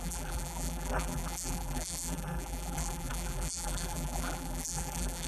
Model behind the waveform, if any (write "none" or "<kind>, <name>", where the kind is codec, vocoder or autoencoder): vocoder, BigVGAN v2